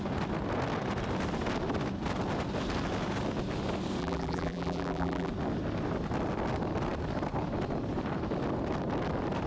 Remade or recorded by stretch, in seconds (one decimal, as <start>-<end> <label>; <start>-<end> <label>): 0.0-4.0 recorded; 4.0-5.3 remade; 5.3-9.5 recorded